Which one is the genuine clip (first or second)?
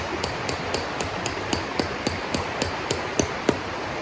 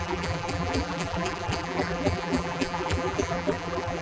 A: first